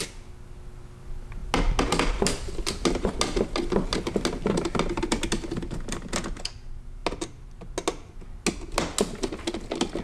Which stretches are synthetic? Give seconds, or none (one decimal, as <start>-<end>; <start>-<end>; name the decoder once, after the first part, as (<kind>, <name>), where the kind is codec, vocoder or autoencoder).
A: none

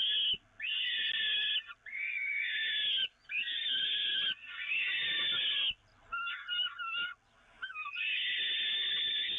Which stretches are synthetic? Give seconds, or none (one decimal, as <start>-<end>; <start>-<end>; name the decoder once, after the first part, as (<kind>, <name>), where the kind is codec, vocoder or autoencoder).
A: none

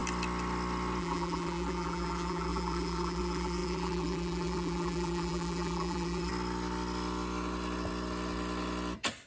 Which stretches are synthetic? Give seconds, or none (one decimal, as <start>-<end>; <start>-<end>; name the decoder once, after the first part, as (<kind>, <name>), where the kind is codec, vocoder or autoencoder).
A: 1.0-6.3 (vocoder, BigVGAN v2)

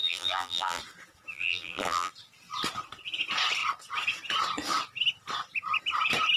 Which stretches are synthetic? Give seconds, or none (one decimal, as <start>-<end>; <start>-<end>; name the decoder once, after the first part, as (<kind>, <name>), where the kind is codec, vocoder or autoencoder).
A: 0.0-0.8 (vocoder, BigVGAN v2); 1.3-2.1

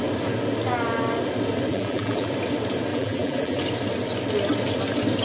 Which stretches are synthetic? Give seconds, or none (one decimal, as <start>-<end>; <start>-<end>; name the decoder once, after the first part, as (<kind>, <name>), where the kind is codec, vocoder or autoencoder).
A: 1.7-2.3 (vocoder, BigVGAN v2); 2.9-3.6